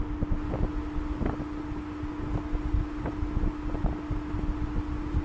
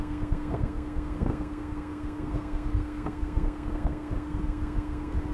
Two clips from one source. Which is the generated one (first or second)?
second